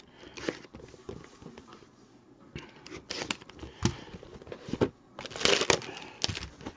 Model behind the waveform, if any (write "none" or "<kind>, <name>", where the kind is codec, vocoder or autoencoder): none